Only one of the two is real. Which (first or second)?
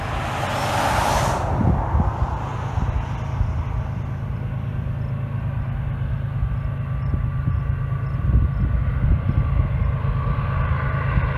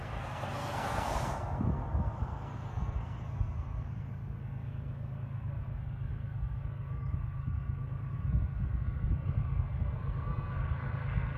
first